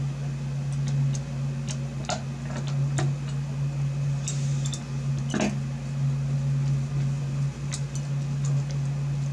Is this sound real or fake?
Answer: real